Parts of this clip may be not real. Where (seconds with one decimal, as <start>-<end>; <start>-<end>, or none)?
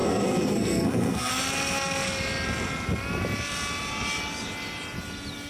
0.0-1.3